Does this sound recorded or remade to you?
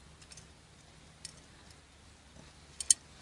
recorded